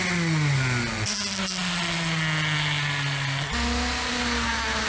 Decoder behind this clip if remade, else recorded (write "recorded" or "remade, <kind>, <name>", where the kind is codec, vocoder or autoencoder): recorded